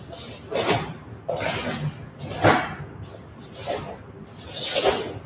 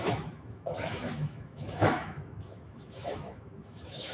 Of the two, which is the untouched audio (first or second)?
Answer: first